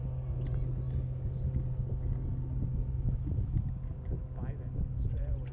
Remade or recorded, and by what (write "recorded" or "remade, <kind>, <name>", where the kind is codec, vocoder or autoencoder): recorded